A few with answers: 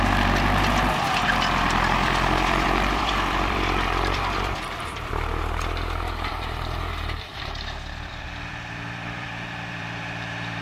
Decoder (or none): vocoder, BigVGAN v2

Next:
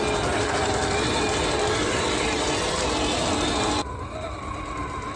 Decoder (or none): none